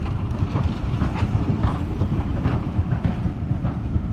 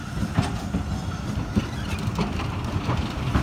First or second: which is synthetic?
first